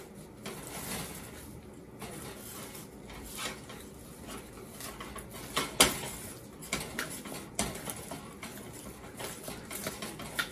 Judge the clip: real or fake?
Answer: real